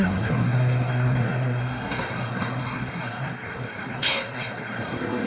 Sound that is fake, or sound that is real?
fake